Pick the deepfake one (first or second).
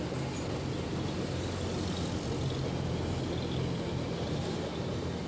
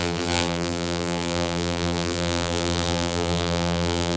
second